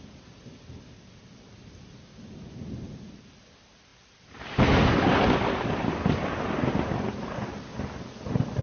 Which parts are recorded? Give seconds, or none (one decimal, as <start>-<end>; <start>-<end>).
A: 0.0-8.6